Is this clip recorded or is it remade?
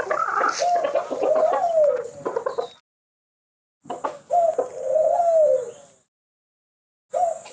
recorded